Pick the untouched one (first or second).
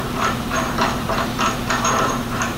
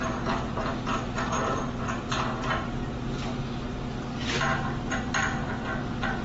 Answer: second